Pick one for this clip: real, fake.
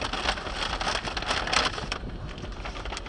real